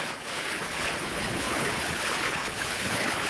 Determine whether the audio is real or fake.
fake